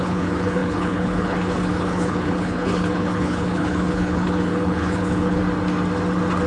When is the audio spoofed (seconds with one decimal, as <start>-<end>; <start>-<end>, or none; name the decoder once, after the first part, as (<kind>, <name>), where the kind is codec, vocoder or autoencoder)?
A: 0.0-5.4 (codec, HILCodec)